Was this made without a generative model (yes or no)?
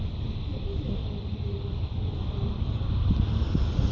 yes